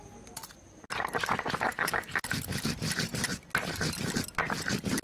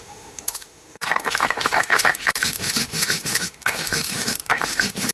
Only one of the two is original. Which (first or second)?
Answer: first